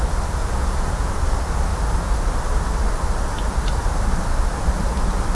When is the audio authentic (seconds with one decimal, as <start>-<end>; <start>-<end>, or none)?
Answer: 0.0-0.4; 1.1-5.3